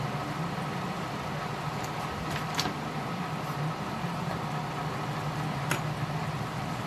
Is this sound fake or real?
real